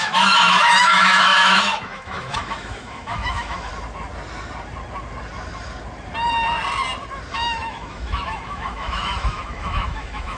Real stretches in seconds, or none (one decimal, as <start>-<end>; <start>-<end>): 3.7-7.3